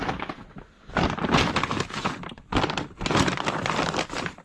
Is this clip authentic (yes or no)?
yes